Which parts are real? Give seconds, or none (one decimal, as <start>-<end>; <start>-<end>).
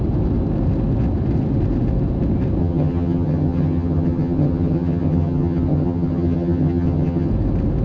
0.0-2.6; 7.3-7.8